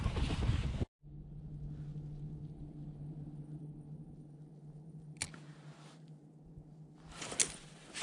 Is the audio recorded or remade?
recorded